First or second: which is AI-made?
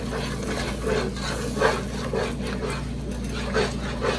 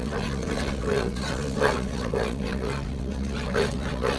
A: second